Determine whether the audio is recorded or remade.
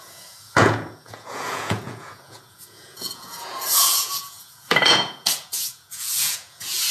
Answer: remade